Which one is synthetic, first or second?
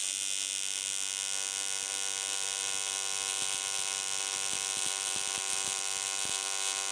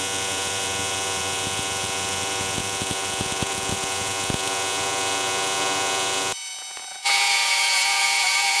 second